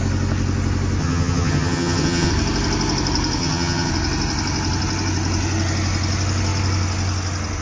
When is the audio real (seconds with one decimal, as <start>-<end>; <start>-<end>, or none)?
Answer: 0.0-1.0; 2.3-3.4; 3.9-7.6